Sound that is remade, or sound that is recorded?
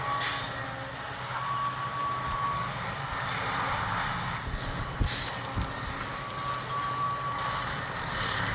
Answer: recorded